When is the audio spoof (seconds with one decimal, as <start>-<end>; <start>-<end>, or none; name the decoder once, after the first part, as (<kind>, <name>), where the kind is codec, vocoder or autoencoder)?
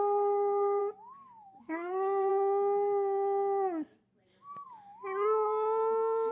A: 0.0-0.8 (codec, SNAC); 1.6-2.3